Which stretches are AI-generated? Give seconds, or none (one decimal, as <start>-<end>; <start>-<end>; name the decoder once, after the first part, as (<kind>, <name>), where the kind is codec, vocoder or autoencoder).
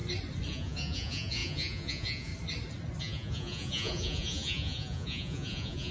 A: 0.5-2.3 (vocoder, Vocos); 3.0-5.9